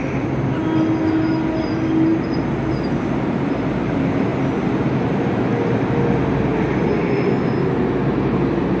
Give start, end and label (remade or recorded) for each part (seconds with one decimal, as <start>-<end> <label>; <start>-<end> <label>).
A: 0.0-8.8 recorded